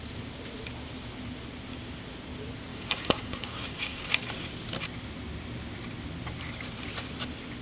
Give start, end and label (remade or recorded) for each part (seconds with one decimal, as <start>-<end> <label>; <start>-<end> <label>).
0.0-2.7 recorded; 2.7-4.3 remade; 4.3-7.6 recorded